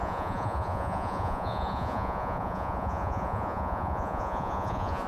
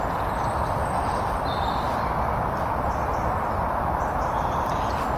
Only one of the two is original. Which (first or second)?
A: second